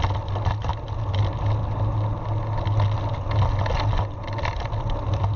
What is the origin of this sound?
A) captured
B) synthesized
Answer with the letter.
A